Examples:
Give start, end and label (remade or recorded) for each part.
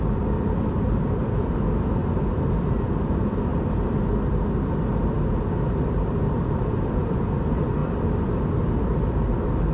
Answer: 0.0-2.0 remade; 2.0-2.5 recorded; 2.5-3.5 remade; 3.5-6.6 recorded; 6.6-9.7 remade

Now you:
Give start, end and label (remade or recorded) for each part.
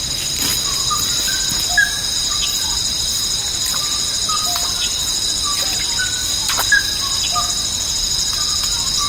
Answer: 0.0-4.6 recorded; 4.6-5.3 remade; 5.3-6.2 recorded; 6.2-6.8 remade; 6.8-9.1 recorded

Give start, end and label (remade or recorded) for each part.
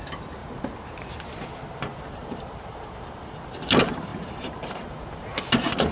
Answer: 0.0-0.4 recorded; 0.4-1.2 remade; 1.2-2.2 recorded; 2.2-3.1 remade; 3.1-4.1 recorded; 4.1-5.4 remade; 5.4-5.9 recorded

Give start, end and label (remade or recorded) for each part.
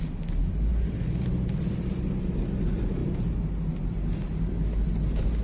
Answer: 0.0-0.7 recorded; 0.7-2.5 remade; 2.5-5.4 recorded